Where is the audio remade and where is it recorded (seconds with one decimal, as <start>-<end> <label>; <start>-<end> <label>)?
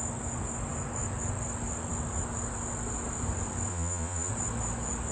0.0-3.7 recorded; 3.7-4.3 remade; 4.3-5.1 recorded